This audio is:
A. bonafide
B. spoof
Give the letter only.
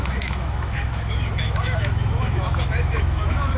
B